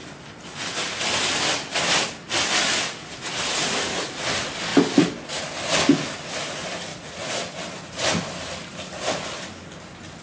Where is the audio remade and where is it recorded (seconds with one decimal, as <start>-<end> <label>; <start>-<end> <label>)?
0.0-3.6 recorded; 3.6-4.2 remade; 4.2-10.2 recorded